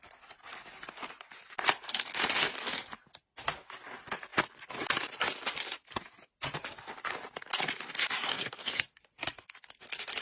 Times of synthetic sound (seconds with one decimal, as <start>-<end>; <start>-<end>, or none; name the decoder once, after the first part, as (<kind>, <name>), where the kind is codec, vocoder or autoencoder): 8.3-8.8 (codec, SNAC)